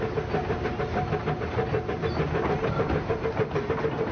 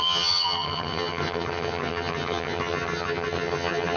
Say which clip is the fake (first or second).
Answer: second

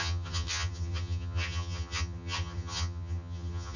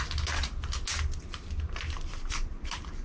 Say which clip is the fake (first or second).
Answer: first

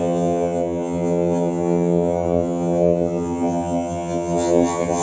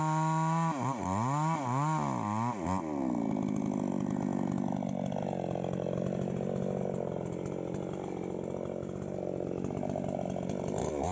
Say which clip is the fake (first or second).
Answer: first